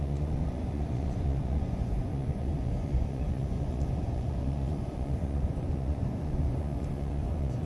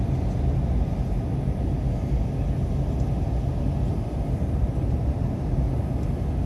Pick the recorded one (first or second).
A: second